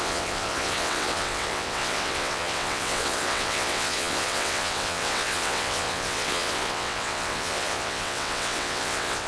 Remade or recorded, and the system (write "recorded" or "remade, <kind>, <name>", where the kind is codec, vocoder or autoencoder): remade, vocoder, WaveNeXt